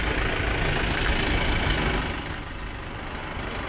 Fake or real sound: real